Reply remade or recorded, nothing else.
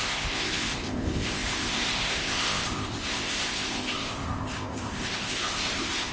remade